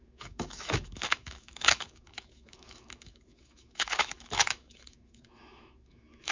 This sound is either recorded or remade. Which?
remade